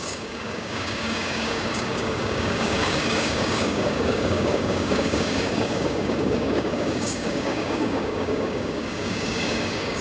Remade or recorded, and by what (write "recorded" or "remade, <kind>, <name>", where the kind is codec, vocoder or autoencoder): remade, codec, DAC